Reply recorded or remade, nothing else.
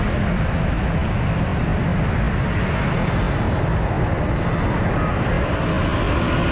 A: recorded